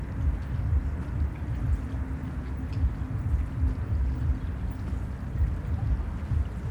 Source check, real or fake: real